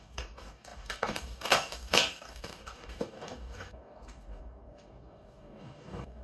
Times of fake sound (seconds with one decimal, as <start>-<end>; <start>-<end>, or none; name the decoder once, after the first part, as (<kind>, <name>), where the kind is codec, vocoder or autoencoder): 0.0-6.2 (codec, DAC)